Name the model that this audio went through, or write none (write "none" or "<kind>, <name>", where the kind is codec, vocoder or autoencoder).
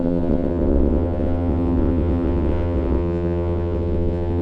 vocoder, WaveNeXt